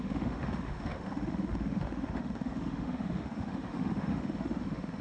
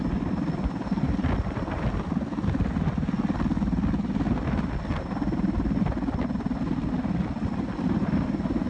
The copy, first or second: first